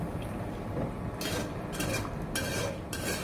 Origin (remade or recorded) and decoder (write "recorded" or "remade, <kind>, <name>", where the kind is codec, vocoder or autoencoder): remade, vocoder, BigVGAN v2